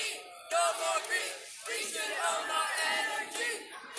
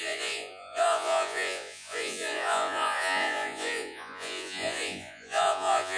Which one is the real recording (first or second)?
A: first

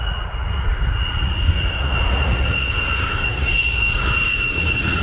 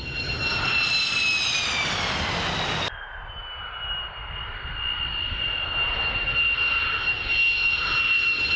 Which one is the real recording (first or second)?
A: second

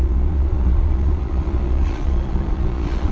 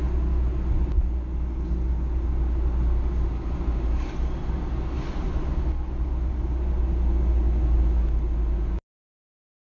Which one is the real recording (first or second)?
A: second